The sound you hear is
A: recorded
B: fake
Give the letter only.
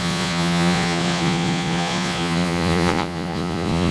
B